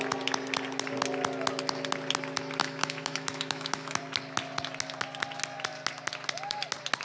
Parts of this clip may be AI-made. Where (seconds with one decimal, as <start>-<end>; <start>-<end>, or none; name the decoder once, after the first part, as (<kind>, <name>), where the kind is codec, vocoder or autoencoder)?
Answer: 2.6-4.0 (autoencoder, DAC-VAE)